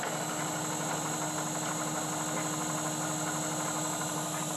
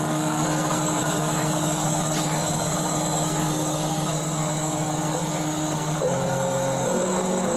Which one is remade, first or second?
second